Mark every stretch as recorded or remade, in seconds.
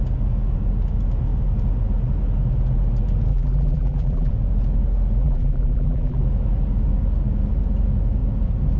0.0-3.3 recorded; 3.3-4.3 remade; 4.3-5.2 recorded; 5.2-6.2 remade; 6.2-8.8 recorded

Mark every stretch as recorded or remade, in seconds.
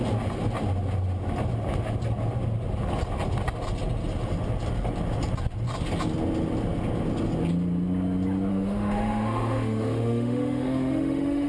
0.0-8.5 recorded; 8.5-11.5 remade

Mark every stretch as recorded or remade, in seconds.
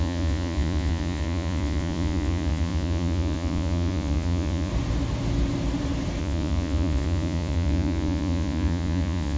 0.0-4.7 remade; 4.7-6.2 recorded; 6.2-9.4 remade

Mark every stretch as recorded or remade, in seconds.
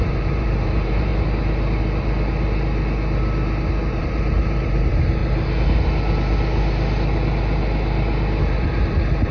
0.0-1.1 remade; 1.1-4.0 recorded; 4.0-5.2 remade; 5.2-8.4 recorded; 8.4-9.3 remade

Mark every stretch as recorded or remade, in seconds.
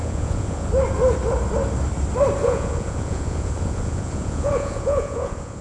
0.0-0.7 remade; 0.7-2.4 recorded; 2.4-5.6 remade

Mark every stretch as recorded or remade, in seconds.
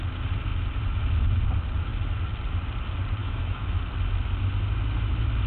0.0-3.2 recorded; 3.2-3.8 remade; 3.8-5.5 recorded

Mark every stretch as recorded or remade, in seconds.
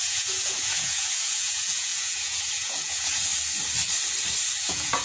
0.0-3.3 remade; 3.3-4.6 recorded; 4.6-5.0 remade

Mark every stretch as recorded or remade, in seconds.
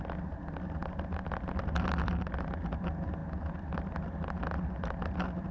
0.0-5.5 recorded